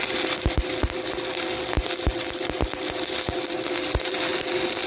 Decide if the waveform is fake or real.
real